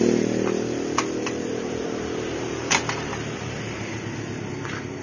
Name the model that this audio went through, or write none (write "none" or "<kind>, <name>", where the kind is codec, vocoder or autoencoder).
vocoder, BigVGAN v2